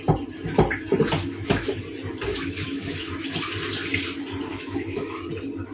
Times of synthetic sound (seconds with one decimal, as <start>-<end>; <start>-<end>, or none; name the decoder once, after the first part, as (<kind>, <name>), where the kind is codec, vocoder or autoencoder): 1.2-1.8 (autoencoder, DAC-VAE); 2.3-3.1; 4.5-5.3